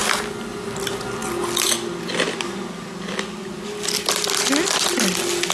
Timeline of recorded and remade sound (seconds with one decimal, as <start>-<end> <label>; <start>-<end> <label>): 0.0-5.5 recorded